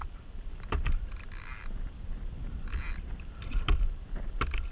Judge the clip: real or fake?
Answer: real